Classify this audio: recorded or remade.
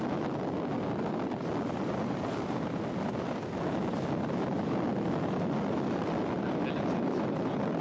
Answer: recorded